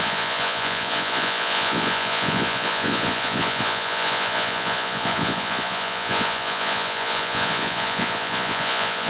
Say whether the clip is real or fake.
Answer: fake